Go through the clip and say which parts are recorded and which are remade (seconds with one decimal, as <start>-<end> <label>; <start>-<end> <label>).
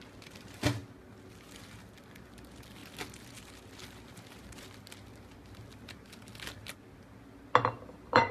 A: 0.0-8.3 recorded